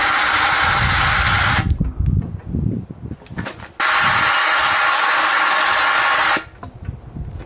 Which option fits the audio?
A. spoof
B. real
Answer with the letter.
B